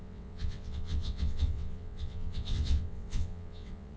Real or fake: fake